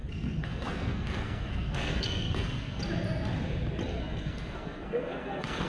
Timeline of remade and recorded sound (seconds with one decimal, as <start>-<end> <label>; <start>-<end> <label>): 0.0-2.8 remade; 2.8-3.9 recorded; 3.9-5.7 remade